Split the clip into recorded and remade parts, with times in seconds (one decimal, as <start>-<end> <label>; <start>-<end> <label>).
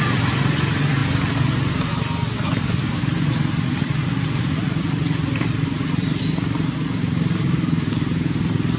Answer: 0.0-1.0 remade; 1.0-4.4 recorded; 4.4-8.8 remade